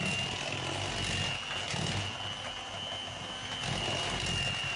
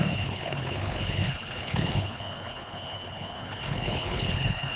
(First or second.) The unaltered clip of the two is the first